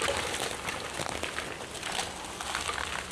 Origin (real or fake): real